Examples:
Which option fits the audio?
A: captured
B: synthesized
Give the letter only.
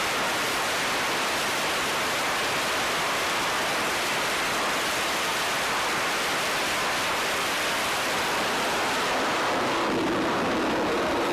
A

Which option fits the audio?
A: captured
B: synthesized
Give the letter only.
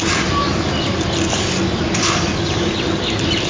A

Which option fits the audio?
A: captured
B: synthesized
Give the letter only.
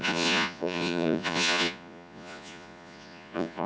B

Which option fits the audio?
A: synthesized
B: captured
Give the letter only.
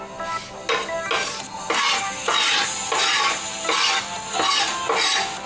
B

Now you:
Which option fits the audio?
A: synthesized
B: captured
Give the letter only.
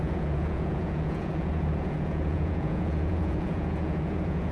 A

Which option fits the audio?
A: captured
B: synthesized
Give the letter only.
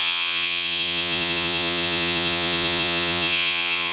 B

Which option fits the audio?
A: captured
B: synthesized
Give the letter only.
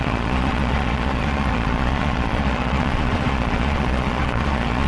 B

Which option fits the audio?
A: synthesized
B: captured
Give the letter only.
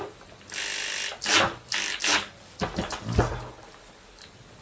B